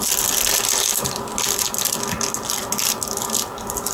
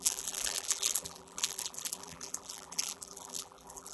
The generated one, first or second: second